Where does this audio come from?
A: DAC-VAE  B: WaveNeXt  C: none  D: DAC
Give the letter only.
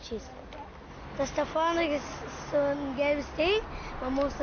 C